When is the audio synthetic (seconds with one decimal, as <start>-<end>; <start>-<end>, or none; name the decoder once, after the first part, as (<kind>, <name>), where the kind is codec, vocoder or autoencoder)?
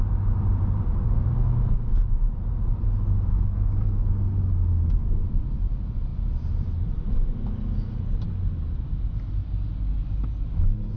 3.3-4.1 (codec, SNAC)